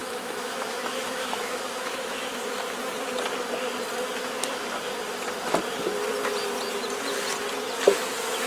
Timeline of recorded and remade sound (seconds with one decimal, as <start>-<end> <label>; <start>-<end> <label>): 0.0-2.6 remade; 2.6-8.5 recorded